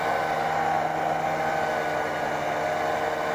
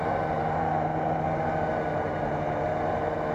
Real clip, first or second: first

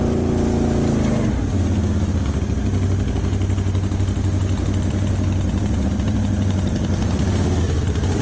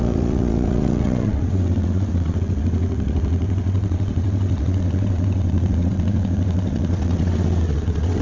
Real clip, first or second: first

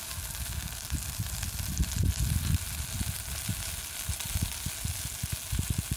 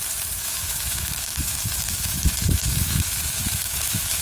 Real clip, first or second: first